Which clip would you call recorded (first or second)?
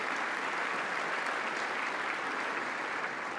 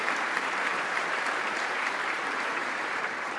first